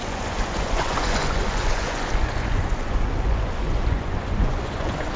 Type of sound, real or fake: fake